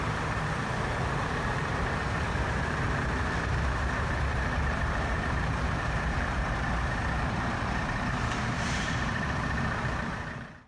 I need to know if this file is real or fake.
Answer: fake